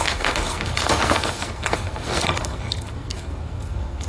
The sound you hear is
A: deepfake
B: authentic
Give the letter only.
A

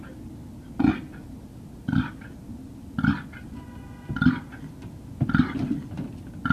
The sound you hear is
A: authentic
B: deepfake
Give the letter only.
A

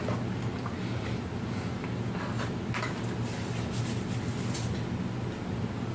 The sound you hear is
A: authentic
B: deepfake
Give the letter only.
A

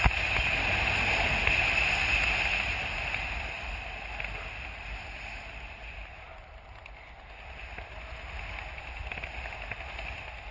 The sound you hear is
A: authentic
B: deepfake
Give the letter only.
A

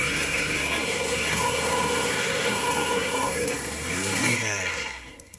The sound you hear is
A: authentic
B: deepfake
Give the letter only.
B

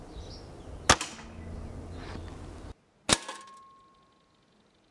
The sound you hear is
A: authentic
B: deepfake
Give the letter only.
A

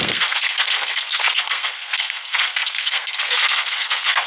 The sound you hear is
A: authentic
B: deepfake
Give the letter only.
B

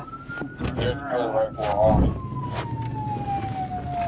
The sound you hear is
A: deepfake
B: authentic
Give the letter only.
B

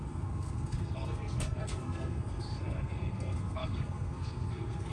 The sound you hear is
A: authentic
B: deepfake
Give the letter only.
B